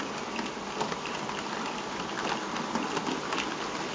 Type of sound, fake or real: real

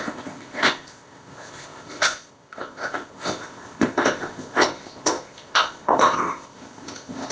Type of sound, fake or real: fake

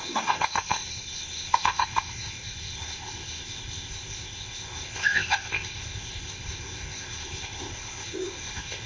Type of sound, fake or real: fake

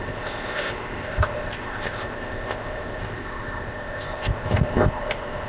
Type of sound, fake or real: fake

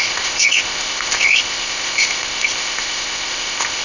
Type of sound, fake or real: fake